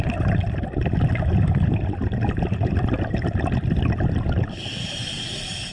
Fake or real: fake